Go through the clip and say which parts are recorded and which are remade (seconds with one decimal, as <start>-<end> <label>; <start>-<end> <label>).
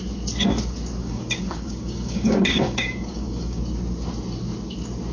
0.0-1.0 recorded; 1.0-3.6 remade; 3.6-5.1 recorded